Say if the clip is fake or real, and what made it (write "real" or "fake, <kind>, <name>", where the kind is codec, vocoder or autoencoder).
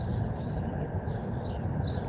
real